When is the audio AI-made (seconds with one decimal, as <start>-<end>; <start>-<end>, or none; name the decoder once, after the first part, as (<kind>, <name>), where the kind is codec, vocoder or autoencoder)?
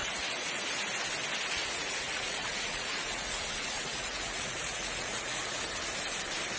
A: 0.0-0.6 (vocoder, Vocos); 1.6-5.6